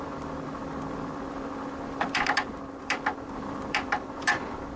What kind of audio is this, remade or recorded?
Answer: remade